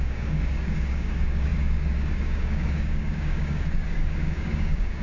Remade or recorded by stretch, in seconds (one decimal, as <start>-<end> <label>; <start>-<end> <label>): 0.0-5.0 remade